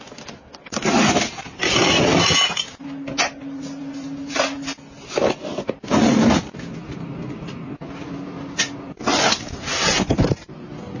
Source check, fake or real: real